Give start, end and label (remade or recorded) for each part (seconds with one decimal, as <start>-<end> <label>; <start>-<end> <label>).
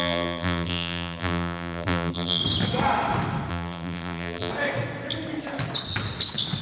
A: 0.0-2.4 remade; 2.4-3.5 recorded; 3.5-4.5 remade; 4.5-6.6 recorded